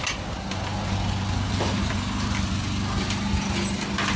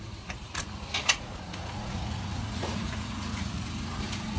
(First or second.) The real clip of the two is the first